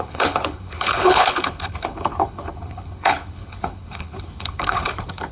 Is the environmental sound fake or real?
fake